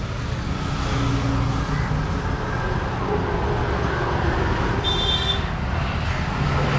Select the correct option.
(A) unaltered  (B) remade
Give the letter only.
A